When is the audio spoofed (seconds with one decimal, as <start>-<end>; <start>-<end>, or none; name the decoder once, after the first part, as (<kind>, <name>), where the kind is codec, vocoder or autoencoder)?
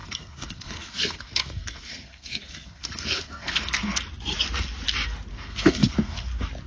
0.0-4.0 (codec, SNAC); 5.3-6.3